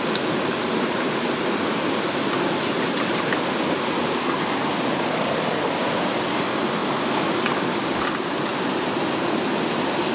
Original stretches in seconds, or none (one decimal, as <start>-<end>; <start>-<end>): 0.0-10.1